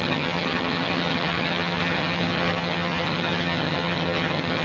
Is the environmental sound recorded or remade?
remade